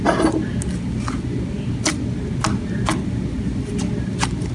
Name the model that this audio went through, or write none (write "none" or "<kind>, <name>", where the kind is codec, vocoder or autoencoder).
none